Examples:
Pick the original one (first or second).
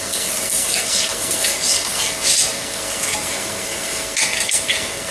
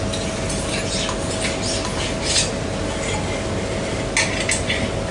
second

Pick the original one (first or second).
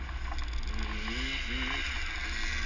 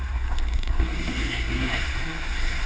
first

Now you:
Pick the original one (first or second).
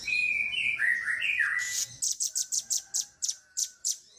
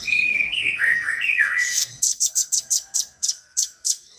first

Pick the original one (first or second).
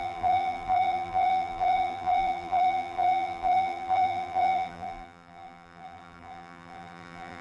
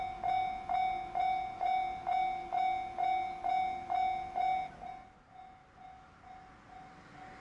second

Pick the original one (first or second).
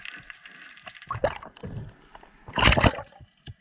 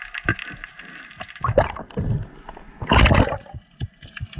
second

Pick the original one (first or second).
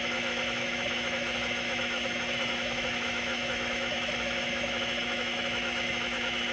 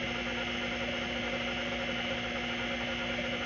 second